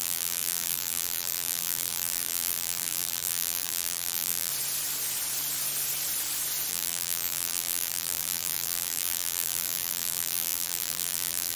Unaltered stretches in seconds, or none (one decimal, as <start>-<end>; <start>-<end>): 4.5-6.7